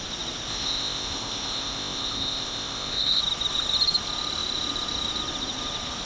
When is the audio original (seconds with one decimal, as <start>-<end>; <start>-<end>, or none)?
0.0-0.5; 3.2-6.1